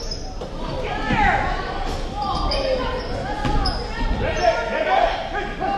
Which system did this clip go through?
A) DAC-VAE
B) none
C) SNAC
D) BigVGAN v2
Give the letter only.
B